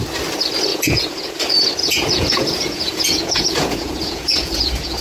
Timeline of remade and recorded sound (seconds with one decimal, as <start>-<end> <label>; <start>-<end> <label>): 0.0-0.7 recorded; 0.7-1.3 remade; 1.3-1.8 recorded; 1.8-5.0 remade